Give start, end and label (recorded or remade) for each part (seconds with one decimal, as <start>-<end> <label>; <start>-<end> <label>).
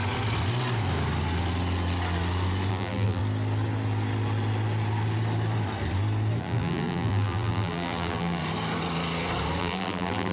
0.0-2.7 recorded; 2.7-3.2 remade; 3.2-6.4 recorded; 6.4-8.4 remade; 8.4-9.6 recorded; 9.6-10.3 remade